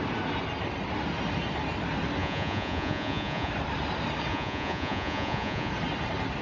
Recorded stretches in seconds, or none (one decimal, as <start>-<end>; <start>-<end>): 0.0-2.2; 3.5-4.3; 5.7-6.4